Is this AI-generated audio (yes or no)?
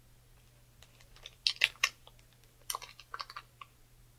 no